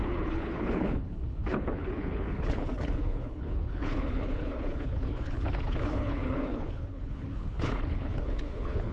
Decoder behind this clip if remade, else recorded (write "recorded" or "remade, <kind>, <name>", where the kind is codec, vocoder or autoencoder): remade, codec, HILCodec